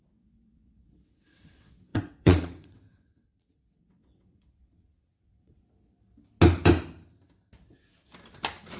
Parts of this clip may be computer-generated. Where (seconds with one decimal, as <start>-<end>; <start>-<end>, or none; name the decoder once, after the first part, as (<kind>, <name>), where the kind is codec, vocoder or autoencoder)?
0.0-5.6 (vocoder, WaveNeXt)

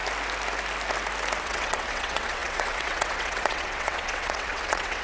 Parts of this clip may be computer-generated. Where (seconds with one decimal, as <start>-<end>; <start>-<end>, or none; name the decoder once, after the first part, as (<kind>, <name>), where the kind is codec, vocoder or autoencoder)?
1.4-5.0 (vocoder, WaveNeXt)

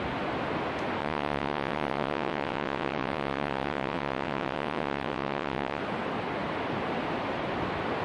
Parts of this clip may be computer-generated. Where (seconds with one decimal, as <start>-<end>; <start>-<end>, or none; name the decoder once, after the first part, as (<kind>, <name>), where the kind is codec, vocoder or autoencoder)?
1.0-5.8 (vocoder, WaveNeXt)

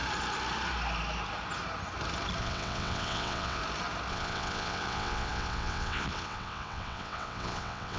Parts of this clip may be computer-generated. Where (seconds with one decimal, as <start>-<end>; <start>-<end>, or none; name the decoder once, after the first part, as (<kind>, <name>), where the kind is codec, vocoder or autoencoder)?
2.4-3.6 (vocoder, WaveNeXt); 4.1-8.0

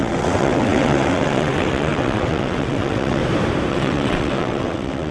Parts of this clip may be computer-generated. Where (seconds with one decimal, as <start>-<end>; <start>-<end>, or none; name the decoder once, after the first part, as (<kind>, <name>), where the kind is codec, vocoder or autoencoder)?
0.0-3.2 (vocoder, WaveNeXt); 3.7-5.1

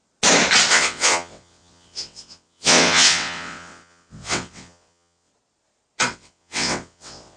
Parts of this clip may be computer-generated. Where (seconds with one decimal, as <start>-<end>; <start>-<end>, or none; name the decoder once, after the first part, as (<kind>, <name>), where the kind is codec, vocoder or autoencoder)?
0.7-5.3 (vocoder, WaveNeXt); 6.1-7.4